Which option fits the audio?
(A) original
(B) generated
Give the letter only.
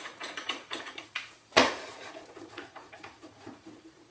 B